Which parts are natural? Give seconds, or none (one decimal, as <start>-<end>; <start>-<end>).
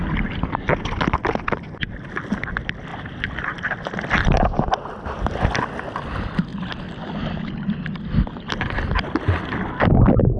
0.0-2.9; 5.4-6.5; 7.4-10.4